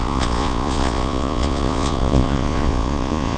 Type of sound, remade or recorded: remade